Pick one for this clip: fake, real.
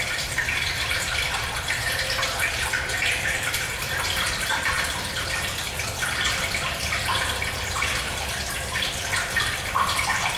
fake